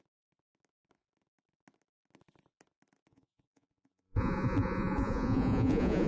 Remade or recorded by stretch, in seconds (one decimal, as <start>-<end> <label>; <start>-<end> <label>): 0.0-3.1 recorded; 3.1-6.1 remade